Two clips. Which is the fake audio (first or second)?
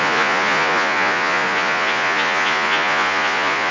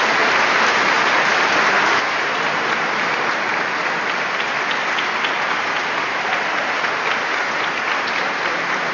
first